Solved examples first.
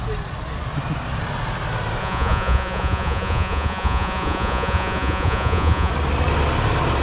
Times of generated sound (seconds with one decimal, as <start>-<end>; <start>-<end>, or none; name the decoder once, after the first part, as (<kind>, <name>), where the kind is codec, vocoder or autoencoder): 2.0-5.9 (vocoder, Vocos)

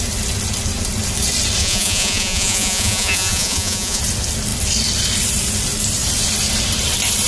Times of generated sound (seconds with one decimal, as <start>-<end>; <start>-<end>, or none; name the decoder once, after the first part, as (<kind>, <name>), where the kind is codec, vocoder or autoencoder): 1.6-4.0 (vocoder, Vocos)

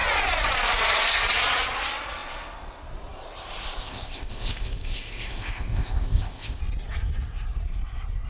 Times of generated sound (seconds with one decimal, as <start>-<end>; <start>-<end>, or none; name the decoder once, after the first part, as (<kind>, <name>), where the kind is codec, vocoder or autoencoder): 3.8-6.6 (codec, ZipCodec)